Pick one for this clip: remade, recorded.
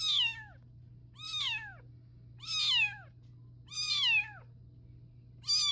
recorded